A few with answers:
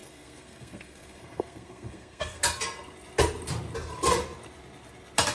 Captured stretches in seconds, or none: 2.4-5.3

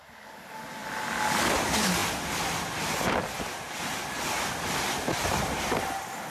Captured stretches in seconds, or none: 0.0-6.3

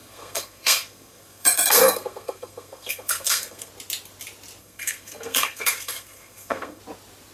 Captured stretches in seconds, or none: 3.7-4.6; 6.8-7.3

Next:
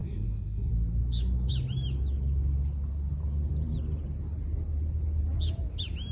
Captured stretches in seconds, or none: 0.7-6.1

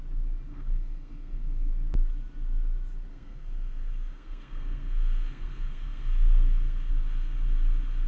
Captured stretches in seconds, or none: 0.0-0.5; 1.7-3.1; 6.9-8.1